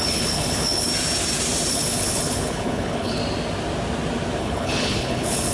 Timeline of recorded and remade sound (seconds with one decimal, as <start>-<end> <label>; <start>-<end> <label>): 0.0-0.9 remade; 0.9-1.7 recorded; 1.7-3.2 remade; 3.2-4.4 recorded; 4.4-5.5 remade